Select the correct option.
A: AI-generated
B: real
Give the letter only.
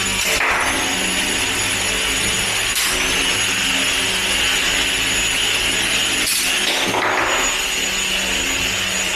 B